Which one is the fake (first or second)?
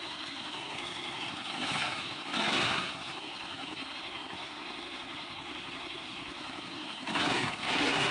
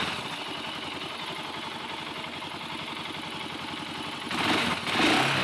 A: first